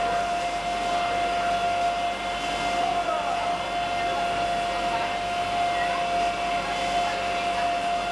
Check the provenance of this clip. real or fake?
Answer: real